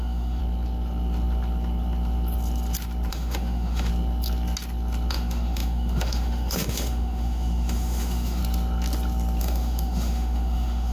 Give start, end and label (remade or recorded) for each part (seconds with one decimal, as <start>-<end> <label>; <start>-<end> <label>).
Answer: 0.0-0.4 remade; 0.4-3.1 recorded; 3.1-3.9 remade; 3.9-5.1 recorded; 5.1-8.4 remade; 8.4-9.4 recorded; 9.4-10.9 remade

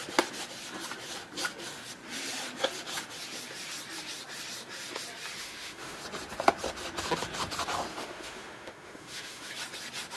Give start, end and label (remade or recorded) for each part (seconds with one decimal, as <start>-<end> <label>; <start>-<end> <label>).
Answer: 0.0-5.4 recorded; 5.4-6.0 remade; 6.0-7.9 recorded; 7.9-9.5 remade; 9.5-10.2 recorded

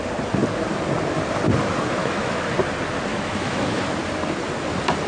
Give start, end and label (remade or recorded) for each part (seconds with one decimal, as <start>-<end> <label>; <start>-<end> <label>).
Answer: 0.0-2.0 recorded; 2.0-2.5 remade; 2.5-3.1 recorded; 3.1-3.8 remade; 3.8-5.1 recorded

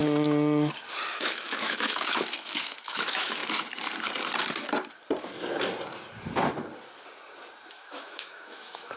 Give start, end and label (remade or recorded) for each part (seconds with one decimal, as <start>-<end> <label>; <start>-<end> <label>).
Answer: 0.0-1.1 recorded; 1.1-3.4 remade; 3.4-7.7 recorded; 7.7-9.0 remade

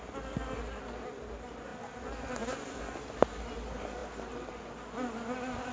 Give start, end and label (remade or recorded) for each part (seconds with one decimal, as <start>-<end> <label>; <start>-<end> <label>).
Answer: 0.0-5.7 recorded

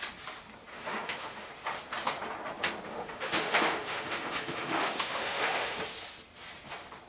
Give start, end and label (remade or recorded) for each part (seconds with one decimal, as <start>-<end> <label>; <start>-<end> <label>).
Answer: 0.0-0.7 recorded; 0.7-1.5 remade; 1.5-2.9 recorded; 2.9-5.8 remade; 5.8-7.1 recorded

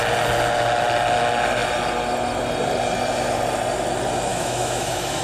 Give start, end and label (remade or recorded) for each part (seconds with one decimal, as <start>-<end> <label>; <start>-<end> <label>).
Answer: 0.0-4.3 recorded; 4.3-5.2 remade